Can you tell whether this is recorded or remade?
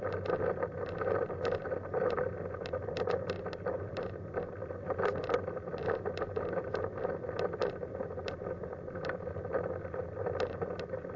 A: recorded